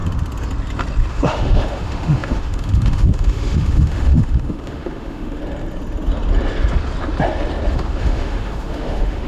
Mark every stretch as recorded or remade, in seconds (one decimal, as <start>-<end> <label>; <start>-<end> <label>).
0.0-1.1 recorded; 1.1-5.4 remade; 5.4-7.7 recorded; 7.7-9.3 remade